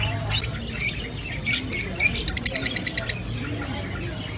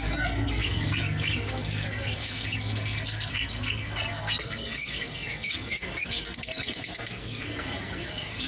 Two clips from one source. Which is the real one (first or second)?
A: first